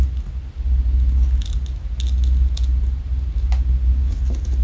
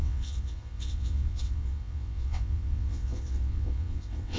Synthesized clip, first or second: second